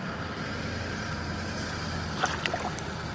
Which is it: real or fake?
real